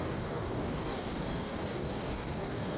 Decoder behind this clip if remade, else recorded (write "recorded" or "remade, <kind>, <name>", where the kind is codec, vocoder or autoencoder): remade, codec, DAC